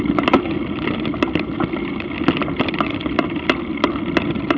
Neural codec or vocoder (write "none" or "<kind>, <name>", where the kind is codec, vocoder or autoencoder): none